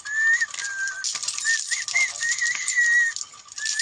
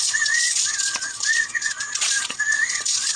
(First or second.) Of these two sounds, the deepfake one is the second